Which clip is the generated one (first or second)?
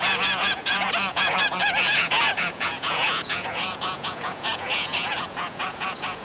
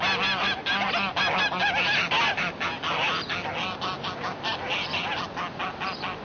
first